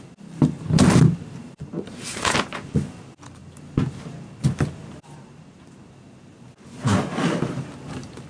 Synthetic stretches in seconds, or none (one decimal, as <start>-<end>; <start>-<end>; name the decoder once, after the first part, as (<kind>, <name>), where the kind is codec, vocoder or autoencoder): none